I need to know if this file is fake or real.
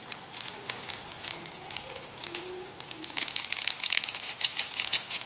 real